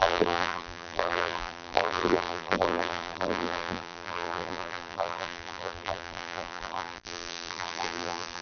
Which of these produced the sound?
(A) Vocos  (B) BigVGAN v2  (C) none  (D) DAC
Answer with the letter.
B